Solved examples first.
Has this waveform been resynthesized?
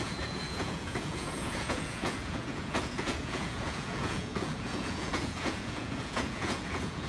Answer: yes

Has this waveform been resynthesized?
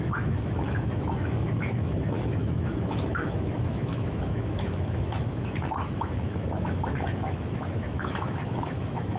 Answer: yes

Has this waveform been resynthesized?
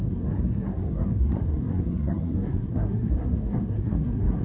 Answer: yes